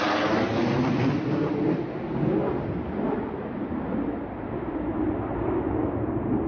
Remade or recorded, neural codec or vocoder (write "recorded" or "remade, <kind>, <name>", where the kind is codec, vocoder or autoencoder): recorded